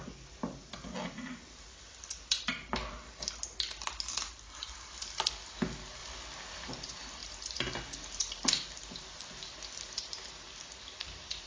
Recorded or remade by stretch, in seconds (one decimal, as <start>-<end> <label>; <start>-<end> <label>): 0.0-11.5 recorded